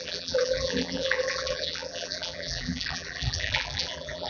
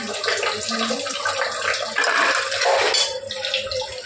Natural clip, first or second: second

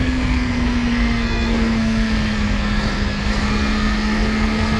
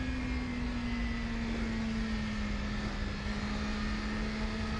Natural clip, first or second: second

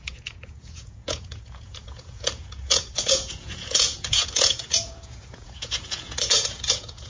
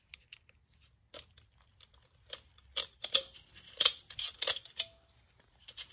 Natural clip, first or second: second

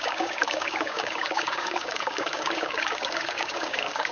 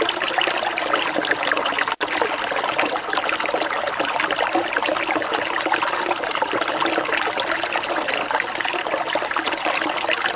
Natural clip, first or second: second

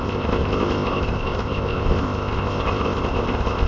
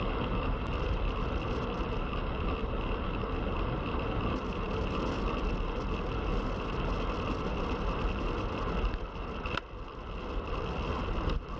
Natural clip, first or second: second